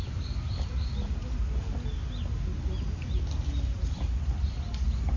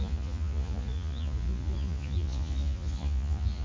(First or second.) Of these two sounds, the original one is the first